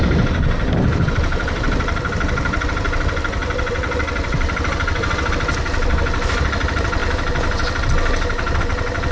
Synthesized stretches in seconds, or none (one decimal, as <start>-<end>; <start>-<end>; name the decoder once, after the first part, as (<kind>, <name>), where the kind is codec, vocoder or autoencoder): 1.3-2.1 (vocoder, BigVGAN v2); 3.4-5.3